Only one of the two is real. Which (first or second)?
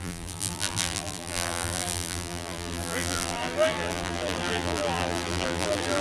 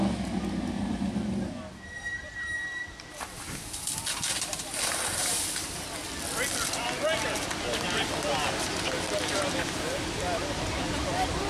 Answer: second